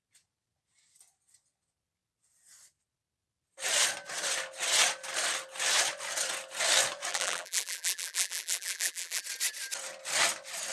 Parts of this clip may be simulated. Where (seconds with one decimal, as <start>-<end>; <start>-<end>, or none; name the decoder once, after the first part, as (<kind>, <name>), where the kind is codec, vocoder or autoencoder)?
7.1-9.2 (vocoder, BigVGAN v2)